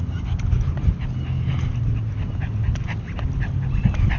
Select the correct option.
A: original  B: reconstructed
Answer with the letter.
A